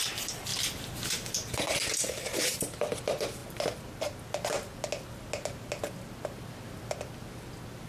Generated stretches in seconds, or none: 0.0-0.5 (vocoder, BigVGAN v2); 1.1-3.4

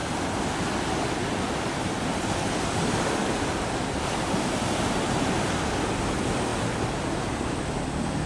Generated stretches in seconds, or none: 1.2-6.1 (vocoder, BigVGAN v2)